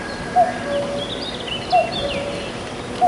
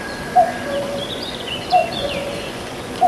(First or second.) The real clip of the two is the first